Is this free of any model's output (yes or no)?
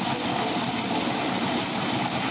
yes